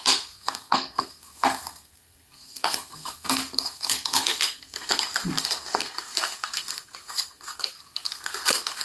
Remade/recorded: remade